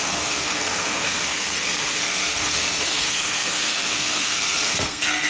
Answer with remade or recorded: remade